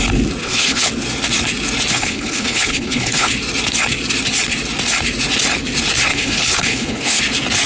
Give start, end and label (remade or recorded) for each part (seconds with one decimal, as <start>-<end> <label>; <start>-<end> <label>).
0.0-0.4 recorded; 0.4-0.9 remade; 0.9-1.9 recorded; 1.9-3.3 remade; 3.3-6.1 recorded; 6.1-7.2 remade; 7.2-7.7 recorded